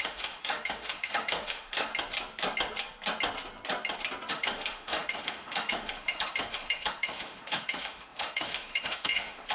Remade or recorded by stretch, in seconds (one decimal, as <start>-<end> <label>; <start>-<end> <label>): 0.0-1.9 remade; 1.9-4.3 recorded; 4.3-9.5 remade